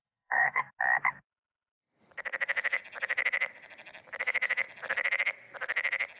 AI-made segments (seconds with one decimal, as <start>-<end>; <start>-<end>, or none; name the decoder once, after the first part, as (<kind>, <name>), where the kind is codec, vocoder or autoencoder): 0.0-0.7 (codec, DAC)

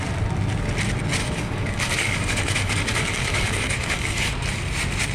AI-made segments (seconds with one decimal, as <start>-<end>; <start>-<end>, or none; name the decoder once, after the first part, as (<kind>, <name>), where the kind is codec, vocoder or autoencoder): 1.2-4.3 (codec, DAC)

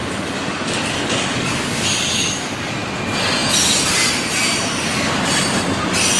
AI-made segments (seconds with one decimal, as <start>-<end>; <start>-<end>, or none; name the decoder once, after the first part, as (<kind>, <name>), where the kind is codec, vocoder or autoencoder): 0.0-2.7 (codec, DAC)